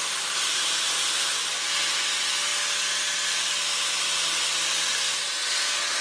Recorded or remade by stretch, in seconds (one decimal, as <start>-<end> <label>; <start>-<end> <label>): 0.0-6.0 recorded